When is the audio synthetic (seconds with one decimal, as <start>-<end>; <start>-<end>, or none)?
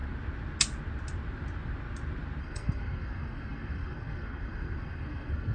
2.4-5.5